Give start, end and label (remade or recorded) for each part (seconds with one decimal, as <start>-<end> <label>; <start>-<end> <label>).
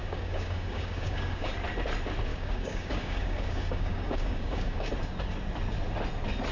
0.0-1.5 remade; 1.5-2.3 recorded; 2.3-4.9 remade; 4.9-6.5 recorded